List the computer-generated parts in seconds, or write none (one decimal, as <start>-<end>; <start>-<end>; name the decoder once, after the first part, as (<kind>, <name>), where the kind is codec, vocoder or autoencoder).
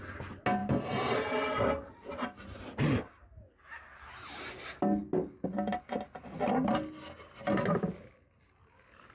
none